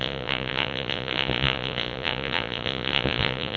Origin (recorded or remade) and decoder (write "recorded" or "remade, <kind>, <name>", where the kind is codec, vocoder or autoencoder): remade, vocoder, Vocos